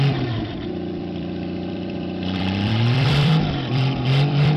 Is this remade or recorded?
remade